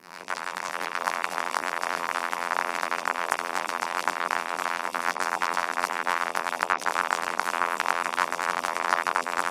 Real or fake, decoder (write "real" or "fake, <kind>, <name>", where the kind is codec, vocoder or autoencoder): fake, vocoder, BigVGAN v2